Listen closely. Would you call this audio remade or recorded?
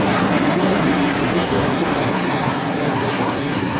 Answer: remade